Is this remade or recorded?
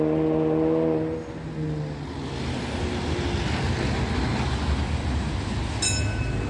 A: recorded